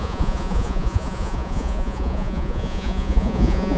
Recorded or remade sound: remade